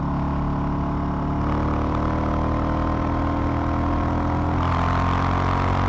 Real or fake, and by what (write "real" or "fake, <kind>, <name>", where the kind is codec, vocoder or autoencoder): real